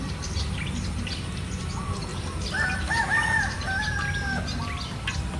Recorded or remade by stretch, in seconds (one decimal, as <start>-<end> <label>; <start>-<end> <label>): 0.0-2.1 recorded; 2.1-3.8 remade; 3.8-5.4 recorded